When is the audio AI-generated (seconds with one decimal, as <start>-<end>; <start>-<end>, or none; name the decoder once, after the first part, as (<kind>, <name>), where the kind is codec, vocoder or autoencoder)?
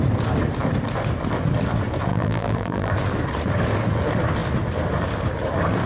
2.1-2.9 (vocoder, BigVGAN v2)